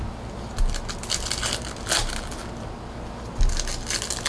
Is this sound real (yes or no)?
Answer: yes